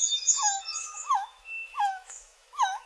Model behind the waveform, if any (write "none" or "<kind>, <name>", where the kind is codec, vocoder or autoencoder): autoencoder, DAC-VAE